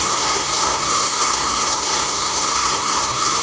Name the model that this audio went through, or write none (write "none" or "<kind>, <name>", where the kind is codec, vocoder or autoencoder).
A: codec, SNAC